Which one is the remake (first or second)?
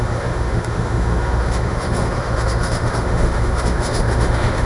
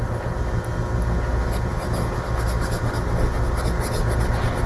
first